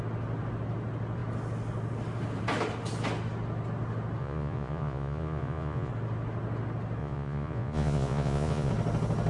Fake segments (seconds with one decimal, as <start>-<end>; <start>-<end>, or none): 4.2-5.9; 7.0-8.7

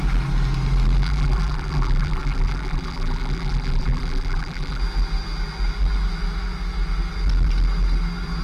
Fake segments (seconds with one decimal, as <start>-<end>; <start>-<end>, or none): 1.0-4.8

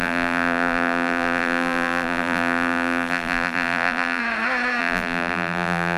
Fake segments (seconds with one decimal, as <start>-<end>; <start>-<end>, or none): 0.0-4.2; 4.8-6.0

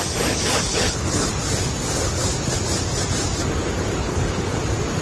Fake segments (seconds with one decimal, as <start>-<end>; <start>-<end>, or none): 0.7-1.3; 4.0-4.6

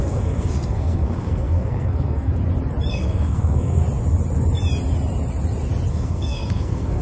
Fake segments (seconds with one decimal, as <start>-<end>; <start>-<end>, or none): 0.0-2.3; 2.9-3.8; 5.9-7.0